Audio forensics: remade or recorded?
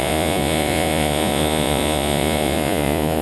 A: remade